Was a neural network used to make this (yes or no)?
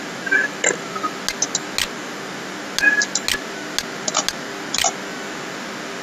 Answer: no